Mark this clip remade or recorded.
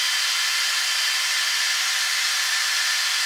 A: recorded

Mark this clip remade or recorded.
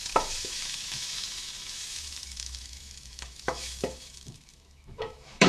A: remade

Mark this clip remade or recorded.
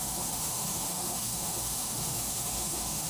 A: remade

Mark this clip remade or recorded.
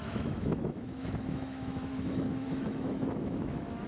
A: remade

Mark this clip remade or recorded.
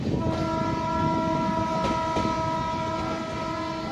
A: recorded